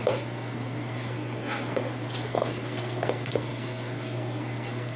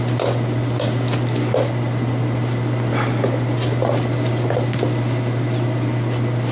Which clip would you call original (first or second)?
second